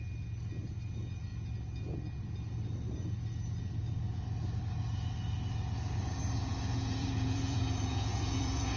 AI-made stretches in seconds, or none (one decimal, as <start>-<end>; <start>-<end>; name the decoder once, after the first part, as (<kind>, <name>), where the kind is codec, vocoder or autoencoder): 6.5-8.8 (vocoder, Vocos)